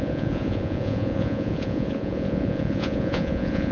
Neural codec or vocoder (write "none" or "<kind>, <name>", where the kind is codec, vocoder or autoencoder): vocoder, Vocos